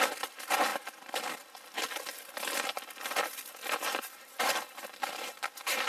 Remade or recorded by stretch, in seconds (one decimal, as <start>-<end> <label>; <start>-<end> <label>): 0.0-0.7 recorded; 0.7-1.2 remade; 1.2-2.1 recorded; 2.1-5.2 remade; 5.2-5.9 recorded